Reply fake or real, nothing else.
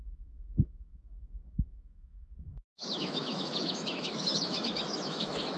fake